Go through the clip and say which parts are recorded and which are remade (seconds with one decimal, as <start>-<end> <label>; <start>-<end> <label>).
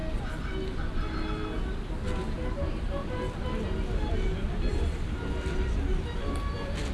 0.0-4.1 recorded; 4.1-6.9 remade